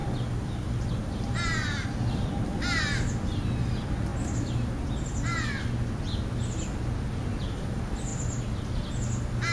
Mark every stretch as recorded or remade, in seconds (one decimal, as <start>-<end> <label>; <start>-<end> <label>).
0.0-9.5 recorded